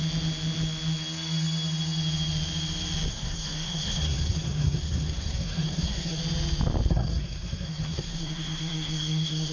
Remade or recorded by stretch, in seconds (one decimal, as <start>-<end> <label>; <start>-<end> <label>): 0.0-3.1 recorded; 3.1-6.2 remade; 6.2-6.9 recorded; 6.9-9.5 remade